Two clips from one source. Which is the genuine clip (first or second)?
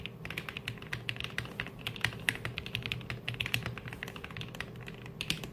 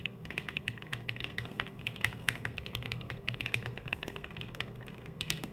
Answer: first